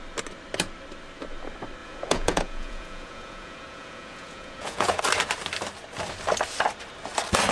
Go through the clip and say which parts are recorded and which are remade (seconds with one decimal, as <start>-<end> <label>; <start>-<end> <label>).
0.0-1.8 recorded; 1.8-5.0 remade; 5.0-7.5 recorded